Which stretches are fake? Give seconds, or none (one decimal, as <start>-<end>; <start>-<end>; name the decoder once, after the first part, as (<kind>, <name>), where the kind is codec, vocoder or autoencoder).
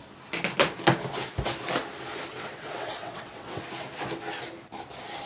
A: 2.3-3.6 (vocoder, WaveNeXt)